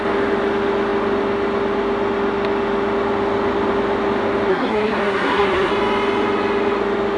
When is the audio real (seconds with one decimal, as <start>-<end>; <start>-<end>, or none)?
0.0-4.5; 5.7-7.2

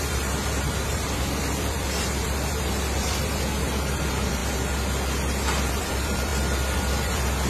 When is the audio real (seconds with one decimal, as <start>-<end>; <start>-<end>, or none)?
4.4-5.7

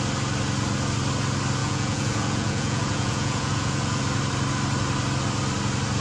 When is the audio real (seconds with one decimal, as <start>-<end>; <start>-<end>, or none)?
0.0-1.6; 4.0-6.0

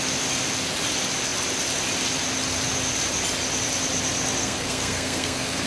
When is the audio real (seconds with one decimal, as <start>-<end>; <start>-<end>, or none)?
0.0-4.4

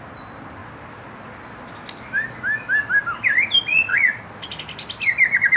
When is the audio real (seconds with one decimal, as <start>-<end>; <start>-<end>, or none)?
0.0-3.7; 4.2-5.6

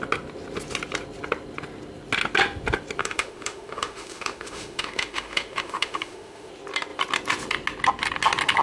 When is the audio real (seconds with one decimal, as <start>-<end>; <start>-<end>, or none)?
0.0-3.0; 6.5-8.6